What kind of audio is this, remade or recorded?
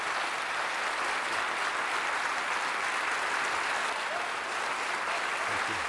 recorded